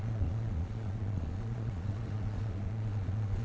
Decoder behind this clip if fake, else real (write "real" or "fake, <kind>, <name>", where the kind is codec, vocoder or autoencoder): fake, vocoder, Vocos